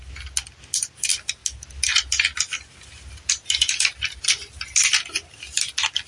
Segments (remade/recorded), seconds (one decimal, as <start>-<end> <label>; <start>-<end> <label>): 0.0-6.1 recorded